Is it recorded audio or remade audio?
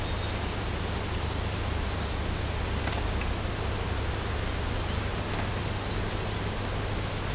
recorded